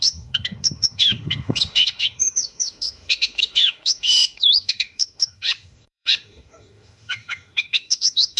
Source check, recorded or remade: remade